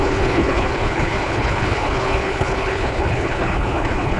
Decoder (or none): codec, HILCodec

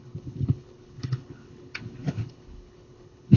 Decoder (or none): codec, HILCodec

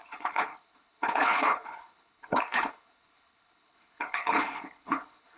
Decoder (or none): codec, HILCodec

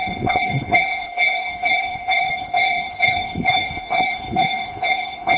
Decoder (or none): codec, HILCodec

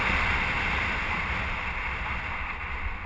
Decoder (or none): none